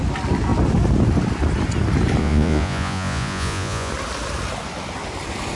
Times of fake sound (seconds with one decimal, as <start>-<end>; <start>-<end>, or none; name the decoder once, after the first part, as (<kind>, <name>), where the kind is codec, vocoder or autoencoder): 2.2-3.9 (vocoder, Vocos)